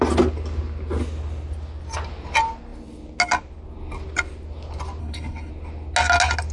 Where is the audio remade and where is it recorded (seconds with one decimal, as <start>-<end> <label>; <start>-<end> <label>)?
0.0-5.0 recorded; 5.0-5.5 remade; 5.5-6.5 recorded